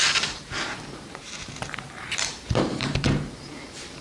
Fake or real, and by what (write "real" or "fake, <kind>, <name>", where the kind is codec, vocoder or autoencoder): fake, vocoder, BigVGAN v2